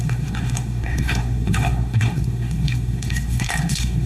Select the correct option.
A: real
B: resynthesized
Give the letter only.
B